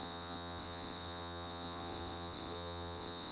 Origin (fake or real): fake